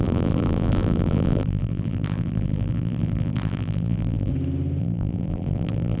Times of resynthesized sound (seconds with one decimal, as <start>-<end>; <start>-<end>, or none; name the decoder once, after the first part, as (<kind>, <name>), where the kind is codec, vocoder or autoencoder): 0.0-4.3 (vocoder, BigVGAN v2); 4.8-6.0